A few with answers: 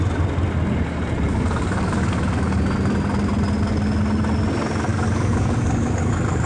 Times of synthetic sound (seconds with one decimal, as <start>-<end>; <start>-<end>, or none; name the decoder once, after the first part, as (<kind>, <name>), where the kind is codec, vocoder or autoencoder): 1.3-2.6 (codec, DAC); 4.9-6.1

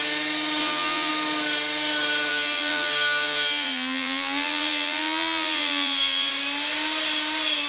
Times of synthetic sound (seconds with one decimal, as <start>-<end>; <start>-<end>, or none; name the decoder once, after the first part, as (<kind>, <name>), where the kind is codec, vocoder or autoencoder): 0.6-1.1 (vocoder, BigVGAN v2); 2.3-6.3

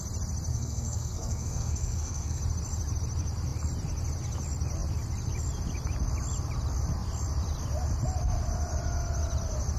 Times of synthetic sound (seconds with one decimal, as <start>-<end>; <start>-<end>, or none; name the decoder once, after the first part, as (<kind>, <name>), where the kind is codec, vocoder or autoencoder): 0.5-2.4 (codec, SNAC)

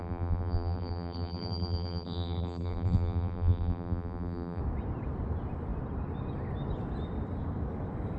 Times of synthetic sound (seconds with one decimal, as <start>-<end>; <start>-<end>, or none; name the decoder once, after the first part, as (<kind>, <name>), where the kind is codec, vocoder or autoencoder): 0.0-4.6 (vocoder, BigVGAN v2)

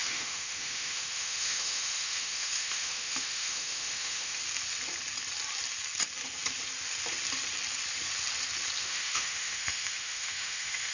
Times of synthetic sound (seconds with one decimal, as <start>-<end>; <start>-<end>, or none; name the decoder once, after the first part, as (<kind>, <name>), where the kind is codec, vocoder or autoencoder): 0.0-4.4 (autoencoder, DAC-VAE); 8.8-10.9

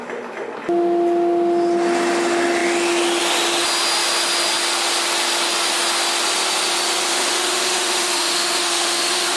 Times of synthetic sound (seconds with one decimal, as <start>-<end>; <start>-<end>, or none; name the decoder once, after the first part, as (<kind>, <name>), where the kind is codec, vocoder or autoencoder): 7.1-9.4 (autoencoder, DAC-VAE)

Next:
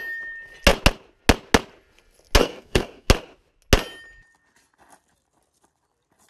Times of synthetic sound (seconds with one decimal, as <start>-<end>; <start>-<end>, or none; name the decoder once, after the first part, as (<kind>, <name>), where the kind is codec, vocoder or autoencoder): 2.4-3.1 (codec, SNAC)